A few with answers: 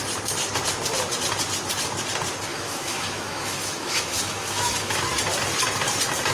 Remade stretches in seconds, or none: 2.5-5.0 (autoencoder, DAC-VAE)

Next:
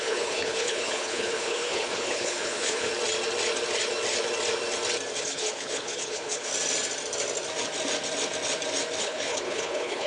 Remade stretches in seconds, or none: 0.0-2.9 (codec, HILCodec); 5.2-6.5; 9.0-10.1

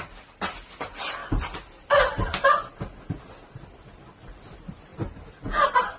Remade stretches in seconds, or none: 1.2-2.8 (vocoder, BigVGAN v2); 4.9-5.4

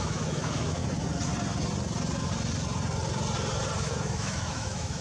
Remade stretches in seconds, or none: 0.0-0.8 (autoencoder, DAC-VAE); 3.8-5.0

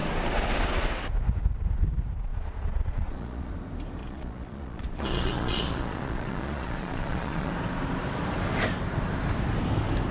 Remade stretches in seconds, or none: 2.3-3.5 (vocoder, Vocos); 4.0-7.5

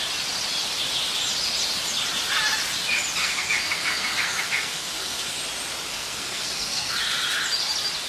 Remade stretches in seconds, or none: 3.2-5.4 (codec, SNAC); 5.9-6.9

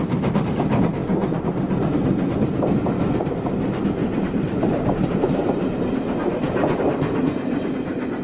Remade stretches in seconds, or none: 4.0-6.8 (vocoder, BigVGAN v2)

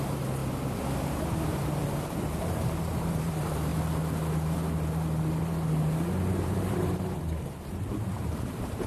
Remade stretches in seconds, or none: 0.0-0.4 (vocoder, BigVGAN v2); 1.0-1.8; 2.4-3.7; 6.3-8.9